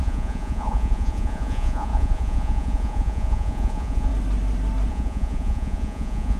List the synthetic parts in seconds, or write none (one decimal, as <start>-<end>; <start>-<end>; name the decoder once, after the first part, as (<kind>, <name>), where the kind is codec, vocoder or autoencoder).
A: 0.0-4.1 (vocoder, Vocos); 4.9-6.4